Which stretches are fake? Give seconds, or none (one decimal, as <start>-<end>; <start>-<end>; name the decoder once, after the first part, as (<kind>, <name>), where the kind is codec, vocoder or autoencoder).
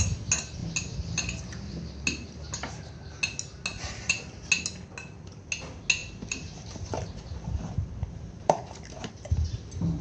3.7-4.4 (vocoder, BigVGAN v2); 6.0-9.1